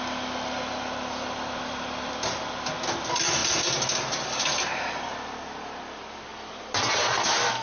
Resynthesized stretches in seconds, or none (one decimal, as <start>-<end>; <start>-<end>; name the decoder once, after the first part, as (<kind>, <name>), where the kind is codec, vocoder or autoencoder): none